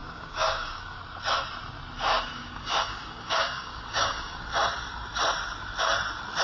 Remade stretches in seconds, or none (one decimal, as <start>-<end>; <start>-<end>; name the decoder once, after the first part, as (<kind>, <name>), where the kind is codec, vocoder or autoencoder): 0.0-1.0 (codec, DAC); 2.1-4.4